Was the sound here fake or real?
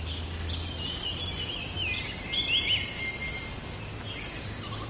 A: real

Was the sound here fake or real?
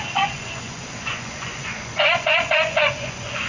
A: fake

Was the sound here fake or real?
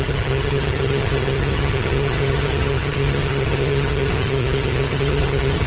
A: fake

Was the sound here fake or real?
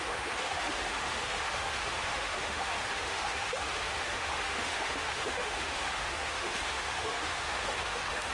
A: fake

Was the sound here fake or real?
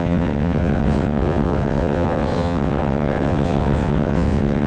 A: fake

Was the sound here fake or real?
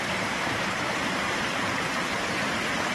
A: fake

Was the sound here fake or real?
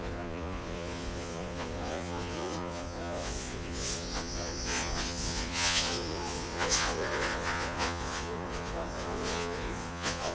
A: fake